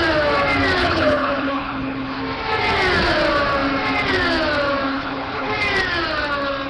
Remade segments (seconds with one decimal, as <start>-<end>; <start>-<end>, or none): 0.8-2.2; 4.9-5.5